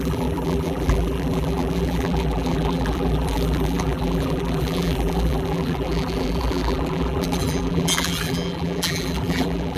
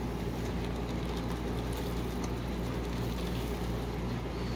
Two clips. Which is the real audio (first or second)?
second